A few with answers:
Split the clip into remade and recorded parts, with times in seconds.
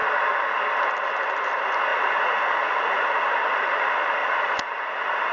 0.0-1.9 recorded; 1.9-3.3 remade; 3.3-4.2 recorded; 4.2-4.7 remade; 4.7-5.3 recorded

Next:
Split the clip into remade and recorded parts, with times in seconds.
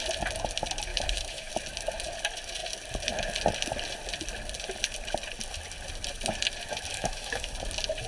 0.0-0.9 recorded; 0.9-1.5 remade; 1.5-6.9 recorded; 6.9-7.5 remade; 7.5-8.1 recorded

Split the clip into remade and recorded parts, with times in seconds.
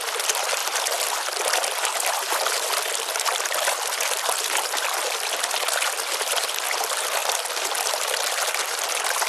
0.0-0.6 recorded; 0.6-5.7 remade; 5.7-7.2 recorded; 7.2-8.2 remade; 8.2-9.3 recorded